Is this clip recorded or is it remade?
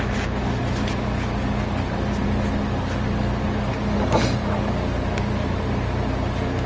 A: recorded